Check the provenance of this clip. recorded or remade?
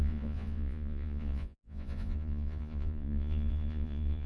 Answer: remade